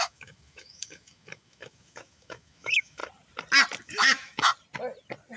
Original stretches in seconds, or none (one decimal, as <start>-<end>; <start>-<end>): 3.0-3.8; 4.5-5.4